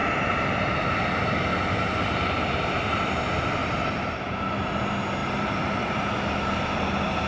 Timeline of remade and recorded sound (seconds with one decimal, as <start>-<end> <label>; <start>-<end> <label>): 0.0-3.6 recorded; 3.6-4.7 remade; 4.7-5.2 recorded; 5.2-6.1 remade; 6.1-7.3 recorded